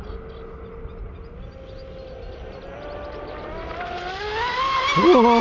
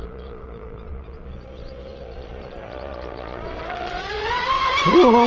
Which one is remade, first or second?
second